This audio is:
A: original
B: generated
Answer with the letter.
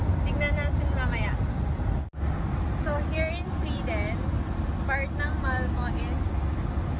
A